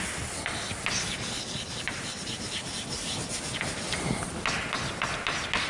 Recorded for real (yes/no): yes